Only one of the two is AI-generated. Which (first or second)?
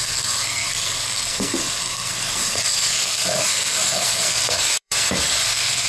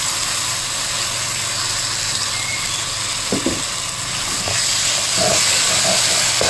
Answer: first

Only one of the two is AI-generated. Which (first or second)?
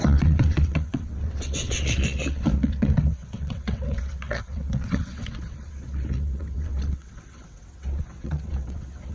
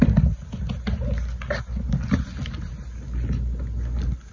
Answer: first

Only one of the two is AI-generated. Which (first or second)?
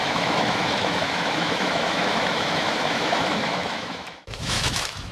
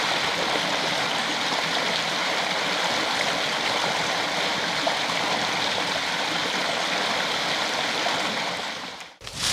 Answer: first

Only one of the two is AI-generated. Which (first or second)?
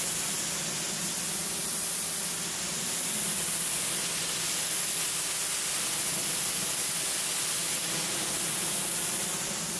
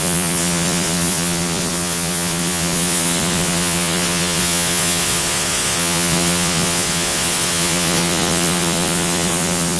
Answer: second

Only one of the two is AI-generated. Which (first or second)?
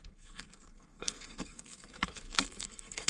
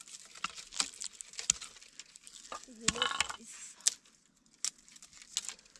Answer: first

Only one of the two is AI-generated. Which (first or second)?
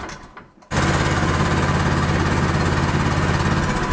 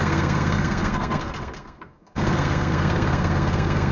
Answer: second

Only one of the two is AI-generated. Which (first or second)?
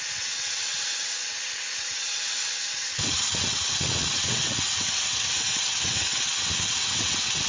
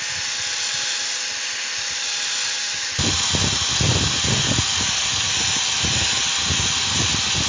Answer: first